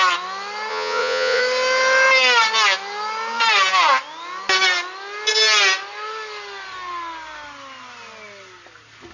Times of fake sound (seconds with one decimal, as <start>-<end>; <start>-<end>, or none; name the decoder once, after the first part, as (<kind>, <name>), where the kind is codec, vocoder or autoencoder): 0.7-1.4 (vocoder, Vocos)